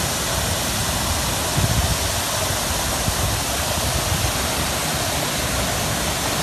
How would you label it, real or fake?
real